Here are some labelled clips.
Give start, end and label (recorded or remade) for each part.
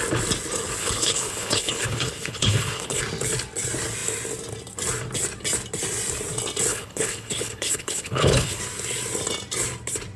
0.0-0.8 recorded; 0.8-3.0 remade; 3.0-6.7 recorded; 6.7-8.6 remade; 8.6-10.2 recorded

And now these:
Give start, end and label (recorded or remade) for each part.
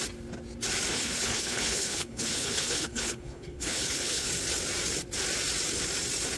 0.0-0.9 recorded; 0.9-4.3 remade; 4.3-6.4 recorded